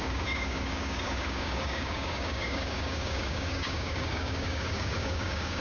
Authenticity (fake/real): fake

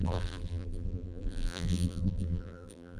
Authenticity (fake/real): fake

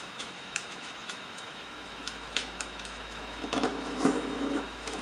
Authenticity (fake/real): fake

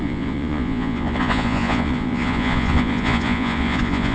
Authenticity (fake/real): fake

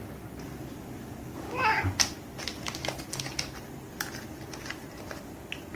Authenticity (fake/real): real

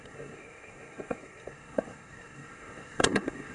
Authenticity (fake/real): fake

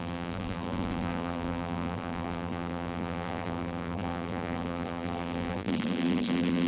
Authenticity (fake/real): fake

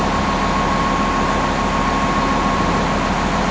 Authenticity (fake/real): real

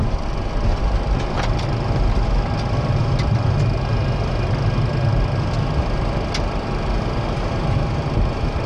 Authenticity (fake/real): real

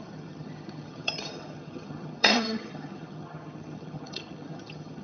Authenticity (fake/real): fake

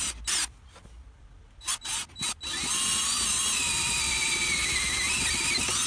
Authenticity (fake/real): real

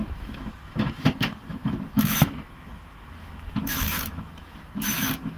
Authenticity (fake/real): fake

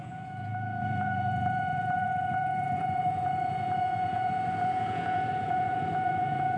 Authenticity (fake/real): fake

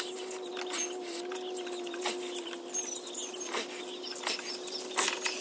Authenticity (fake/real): real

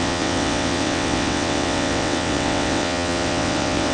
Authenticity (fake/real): fake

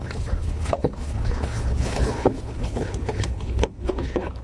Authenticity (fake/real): fake